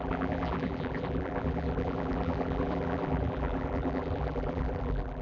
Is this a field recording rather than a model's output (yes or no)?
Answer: no